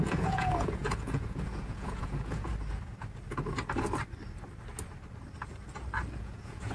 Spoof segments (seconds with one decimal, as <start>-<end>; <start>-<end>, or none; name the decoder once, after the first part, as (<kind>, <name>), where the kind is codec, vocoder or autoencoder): 0.0-2.5 (vocoder, Vocos); 6.2-6.7